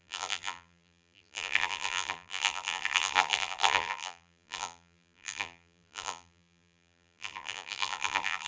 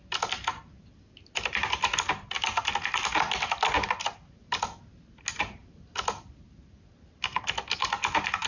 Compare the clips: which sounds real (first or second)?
second